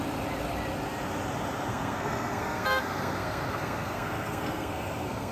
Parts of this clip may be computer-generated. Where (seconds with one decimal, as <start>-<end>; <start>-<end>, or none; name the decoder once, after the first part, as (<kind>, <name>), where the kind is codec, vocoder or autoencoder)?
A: 1.7-5.3 (codec, SNAC)

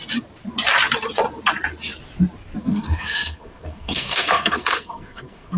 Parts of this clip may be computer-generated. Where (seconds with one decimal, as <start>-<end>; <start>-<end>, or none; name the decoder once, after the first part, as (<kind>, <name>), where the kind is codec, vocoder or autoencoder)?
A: 2.6-5.6 (codec, SNAC)